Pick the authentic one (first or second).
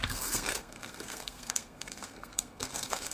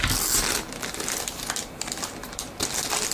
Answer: second